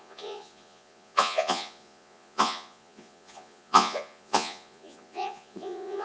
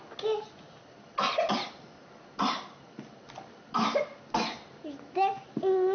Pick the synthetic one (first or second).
first